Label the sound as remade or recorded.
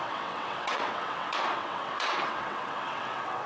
remade